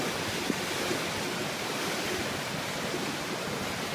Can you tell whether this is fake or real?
real